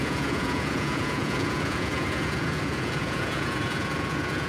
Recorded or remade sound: remade